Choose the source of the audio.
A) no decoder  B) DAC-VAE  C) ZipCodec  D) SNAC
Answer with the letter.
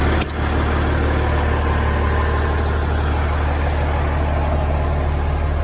A